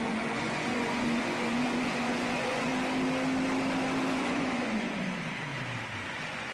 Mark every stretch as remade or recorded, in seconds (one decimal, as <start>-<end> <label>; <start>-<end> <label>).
0.0-2.7 remade; 2.7-4.1 recorded; 4.1-5.5 remade; 5.5-6.1 recorded; 6.1-6.5 remade